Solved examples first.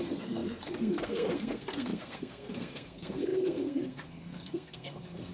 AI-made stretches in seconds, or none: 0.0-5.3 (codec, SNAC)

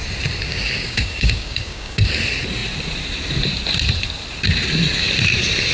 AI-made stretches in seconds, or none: 0.5-2.1 (codec, DAC)

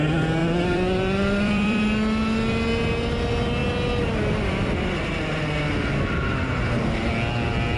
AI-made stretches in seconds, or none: 0.4-1.8 (vocoder, BigVGAN v2)

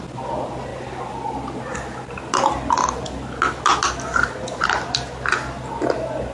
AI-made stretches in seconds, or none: none

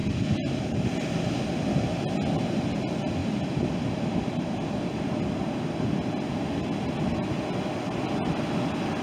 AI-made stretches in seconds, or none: none